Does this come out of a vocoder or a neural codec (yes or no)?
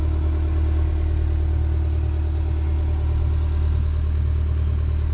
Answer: no